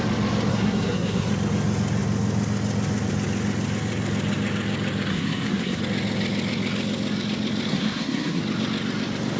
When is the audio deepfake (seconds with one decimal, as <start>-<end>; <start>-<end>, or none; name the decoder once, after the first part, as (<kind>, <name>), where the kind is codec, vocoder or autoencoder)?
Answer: 0.5-1.3 (codec, SNAC); 5.1-5.8; 7.7-8.4